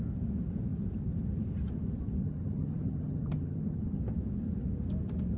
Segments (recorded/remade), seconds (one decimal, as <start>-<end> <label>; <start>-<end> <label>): 0.0-2.2 recorded; 2.2-4.0 remade; 4.0-5.4 recorded